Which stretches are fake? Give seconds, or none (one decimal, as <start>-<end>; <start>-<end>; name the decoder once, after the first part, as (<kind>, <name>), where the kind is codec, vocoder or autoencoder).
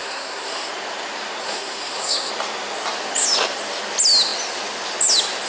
0.0-0.7 (codec, SNAC); 1.4-2.3